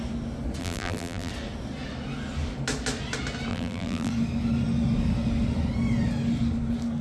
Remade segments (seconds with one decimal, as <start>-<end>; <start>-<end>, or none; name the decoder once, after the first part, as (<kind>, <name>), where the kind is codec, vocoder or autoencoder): 0.6-1.3 (vocoder, BigVGAN v2); 3.5-4.1